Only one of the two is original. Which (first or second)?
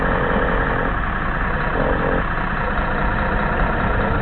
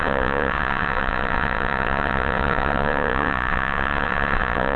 first